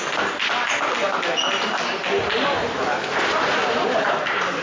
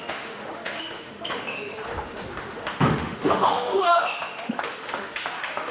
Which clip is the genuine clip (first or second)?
first